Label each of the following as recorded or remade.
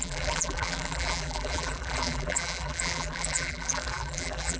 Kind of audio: remade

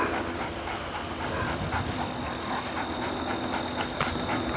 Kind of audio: remade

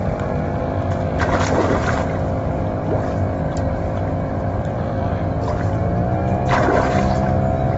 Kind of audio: recorded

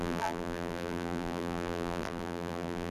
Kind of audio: remade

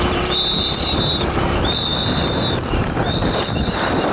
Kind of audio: remade